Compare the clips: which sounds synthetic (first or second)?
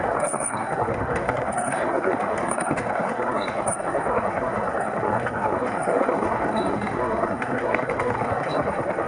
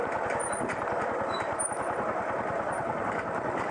first